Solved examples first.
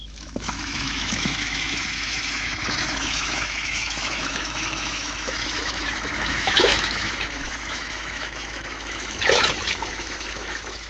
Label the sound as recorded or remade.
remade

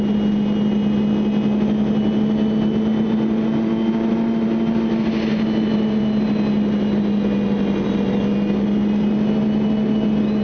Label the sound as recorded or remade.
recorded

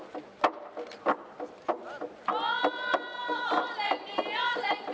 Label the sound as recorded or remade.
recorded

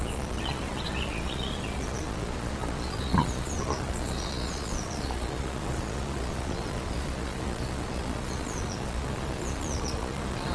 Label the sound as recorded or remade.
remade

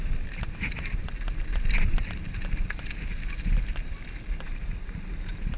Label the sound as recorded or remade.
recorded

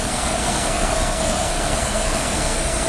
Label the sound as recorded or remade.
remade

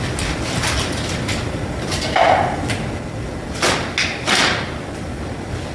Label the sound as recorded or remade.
recorded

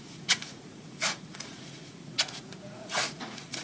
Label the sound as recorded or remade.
remade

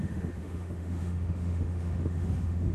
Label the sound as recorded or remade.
remade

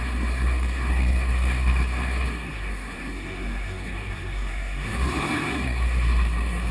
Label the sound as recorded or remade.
remade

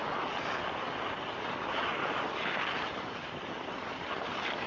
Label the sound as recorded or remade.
recorded